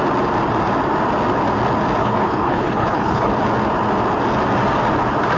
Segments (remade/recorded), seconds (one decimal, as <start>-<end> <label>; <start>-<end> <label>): 0.0-2.0 recorded; 2.0-3.3 remade; 3.3-5.4 recorded